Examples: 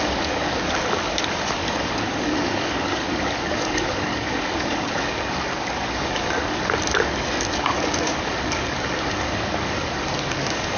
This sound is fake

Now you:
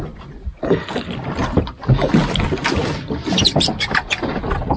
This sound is real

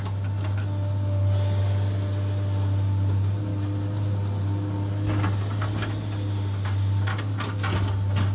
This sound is real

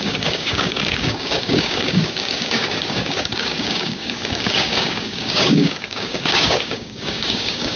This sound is fake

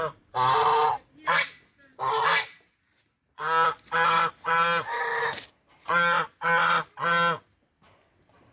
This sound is real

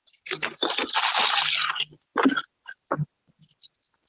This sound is real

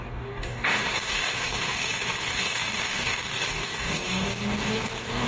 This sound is fake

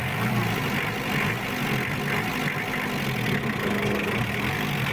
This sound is real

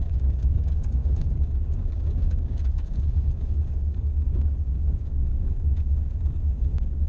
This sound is fake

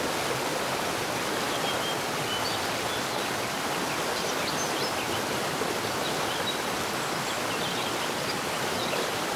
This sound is real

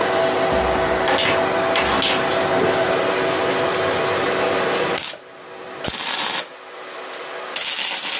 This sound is real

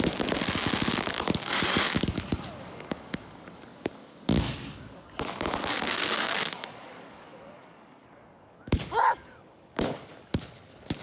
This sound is fake